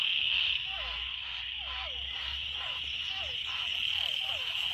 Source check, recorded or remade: remade